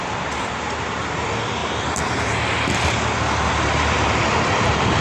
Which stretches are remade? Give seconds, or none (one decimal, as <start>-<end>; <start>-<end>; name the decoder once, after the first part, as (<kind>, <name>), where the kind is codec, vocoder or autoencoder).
0.0-1.6 (vocoder, BigVGAN v2); 3.5-5.0